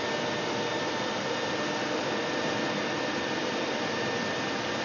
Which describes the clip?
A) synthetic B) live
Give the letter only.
B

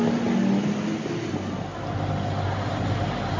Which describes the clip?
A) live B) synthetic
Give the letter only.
A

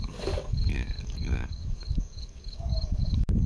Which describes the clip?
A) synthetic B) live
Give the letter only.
A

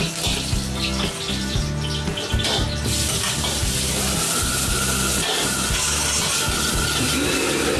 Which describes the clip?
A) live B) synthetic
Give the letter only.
A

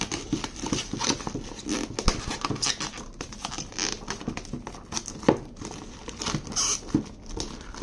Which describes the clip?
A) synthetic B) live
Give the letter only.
B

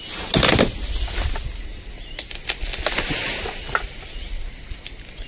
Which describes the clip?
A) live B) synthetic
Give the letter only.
A